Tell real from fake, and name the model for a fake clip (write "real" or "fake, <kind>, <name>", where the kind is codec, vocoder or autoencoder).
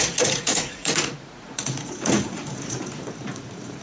fake, vocoder, Vocos